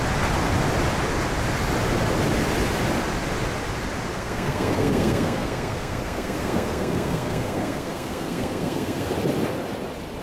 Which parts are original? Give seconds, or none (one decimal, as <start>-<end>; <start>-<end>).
0.0-4.1; 9.1-10.2